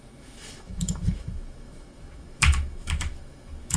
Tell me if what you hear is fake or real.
fake